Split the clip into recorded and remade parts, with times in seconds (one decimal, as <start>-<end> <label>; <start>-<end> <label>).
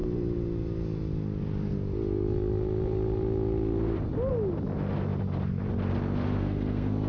0.0-6.4 recorded; 6.4-7.1 remade